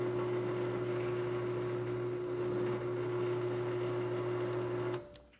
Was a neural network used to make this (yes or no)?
no